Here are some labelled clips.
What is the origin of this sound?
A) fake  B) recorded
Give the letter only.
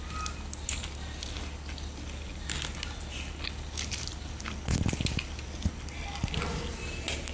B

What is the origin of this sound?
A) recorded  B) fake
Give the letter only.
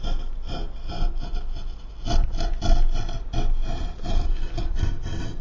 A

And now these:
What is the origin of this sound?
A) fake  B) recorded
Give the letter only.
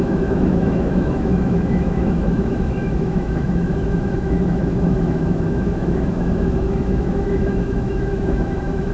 A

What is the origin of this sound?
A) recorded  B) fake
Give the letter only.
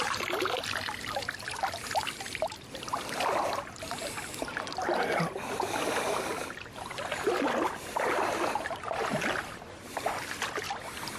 A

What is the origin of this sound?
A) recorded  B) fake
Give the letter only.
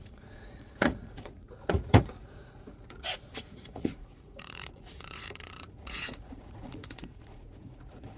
B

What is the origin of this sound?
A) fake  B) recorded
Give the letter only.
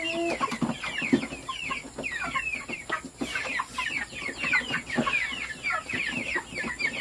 B